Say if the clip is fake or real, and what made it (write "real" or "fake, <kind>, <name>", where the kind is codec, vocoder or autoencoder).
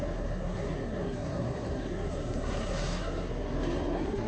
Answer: fake, codec, SNAC